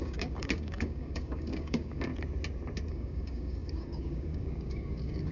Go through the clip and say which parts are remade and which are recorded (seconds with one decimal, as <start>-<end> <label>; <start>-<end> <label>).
0.0-2.1 remade; 2.1-2.9 recorded; 2.9-5.3 remade